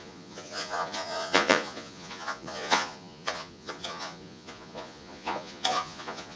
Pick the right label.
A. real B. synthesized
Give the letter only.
B